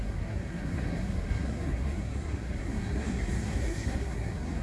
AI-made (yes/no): yes